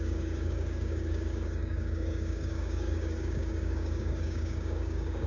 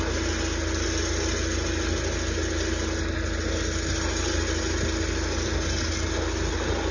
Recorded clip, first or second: second